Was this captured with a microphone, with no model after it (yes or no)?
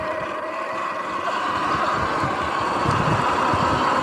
yes